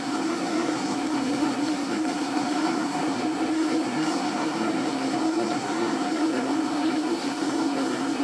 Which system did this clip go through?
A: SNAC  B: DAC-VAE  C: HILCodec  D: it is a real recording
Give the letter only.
A